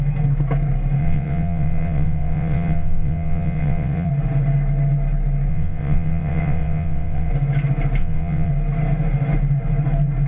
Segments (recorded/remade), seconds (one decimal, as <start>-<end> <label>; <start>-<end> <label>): 0.0-1.0 recorded; 1.0-4.1 remade; 4.1-5.5 recorded; 5.5-7.3 remade; 7.3-8.0 recorded; 8.0-8.5 remade; 8.5-10.3 recorded